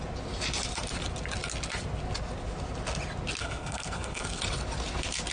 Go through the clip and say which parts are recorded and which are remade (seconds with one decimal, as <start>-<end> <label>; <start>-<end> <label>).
0.0-3.4 recorded; 3.4-4.4 remade; 4.4-5.3 recorded